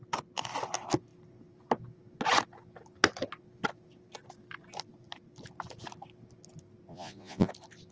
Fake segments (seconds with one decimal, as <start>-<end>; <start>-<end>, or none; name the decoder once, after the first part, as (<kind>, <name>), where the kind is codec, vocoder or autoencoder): 6.9-7.5 (vocoder, Vocos)